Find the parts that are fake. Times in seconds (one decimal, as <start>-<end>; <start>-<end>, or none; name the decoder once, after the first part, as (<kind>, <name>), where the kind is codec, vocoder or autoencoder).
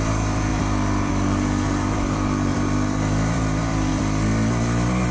0.0-3.9 (vocoder, BigVGAN v2)